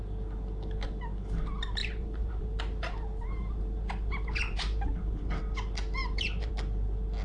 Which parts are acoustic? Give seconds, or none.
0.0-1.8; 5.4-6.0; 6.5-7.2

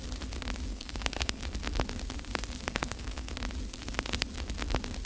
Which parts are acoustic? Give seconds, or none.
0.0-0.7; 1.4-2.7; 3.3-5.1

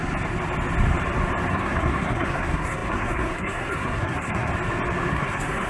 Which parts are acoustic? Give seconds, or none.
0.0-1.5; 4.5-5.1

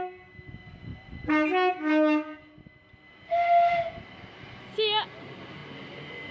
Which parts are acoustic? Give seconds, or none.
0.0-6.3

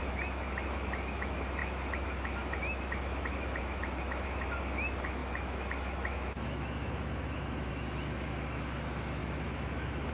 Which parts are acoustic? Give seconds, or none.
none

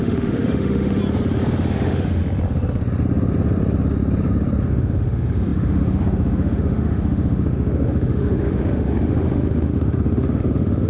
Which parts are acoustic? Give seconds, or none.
1.0-1.7; 2.2-4.7

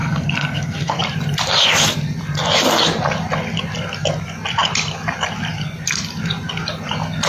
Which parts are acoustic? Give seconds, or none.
1.0-7.3

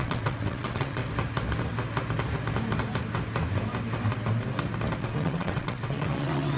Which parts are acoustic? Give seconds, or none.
1.0-5.0